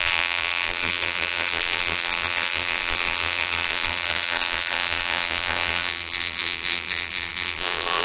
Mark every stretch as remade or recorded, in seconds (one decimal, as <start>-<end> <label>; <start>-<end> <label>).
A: 0.0-8.0 remade